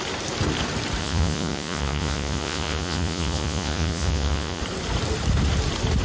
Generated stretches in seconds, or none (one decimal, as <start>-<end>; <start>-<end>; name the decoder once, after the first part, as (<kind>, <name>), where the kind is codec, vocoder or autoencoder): 1.0-4.6 (vocoder, Vocos)

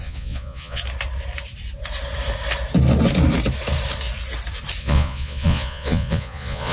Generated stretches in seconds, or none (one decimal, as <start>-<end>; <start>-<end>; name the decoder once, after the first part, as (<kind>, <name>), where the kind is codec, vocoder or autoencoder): 0.0-0.8 (vocoder, Vocos); 4.8-6.7

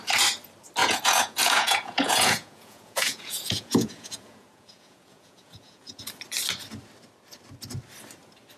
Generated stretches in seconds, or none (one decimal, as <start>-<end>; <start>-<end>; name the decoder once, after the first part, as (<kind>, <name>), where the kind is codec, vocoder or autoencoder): 0.8-6.0 (vocoder, Vocos)

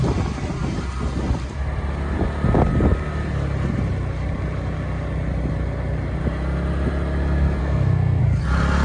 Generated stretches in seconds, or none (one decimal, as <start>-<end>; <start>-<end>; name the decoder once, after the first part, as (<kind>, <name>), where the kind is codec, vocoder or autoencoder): 7.6-8.2 (codec, SNAC)

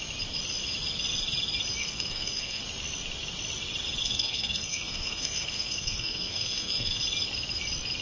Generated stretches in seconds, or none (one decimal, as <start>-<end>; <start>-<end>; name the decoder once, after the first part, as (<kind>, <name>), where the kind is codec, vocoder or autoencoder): 1.8-2.6 (codec, SNAC); 4.0-7.0

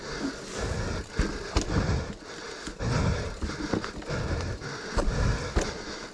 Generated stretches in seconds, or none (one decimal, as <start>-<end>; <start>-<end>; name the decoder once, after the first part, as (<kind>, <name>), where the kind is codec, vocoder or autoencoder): none

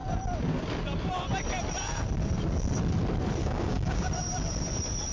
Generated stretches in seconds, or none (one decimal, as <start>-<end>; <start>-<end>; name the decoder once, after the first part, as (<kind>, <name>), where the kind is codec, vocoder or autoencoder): 3.4-4.1 (codec, DAC)

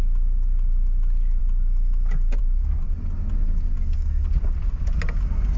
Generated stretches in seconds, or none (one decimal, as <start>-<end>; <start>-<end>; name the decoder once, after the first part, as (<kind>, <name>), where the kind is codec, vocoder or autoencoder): none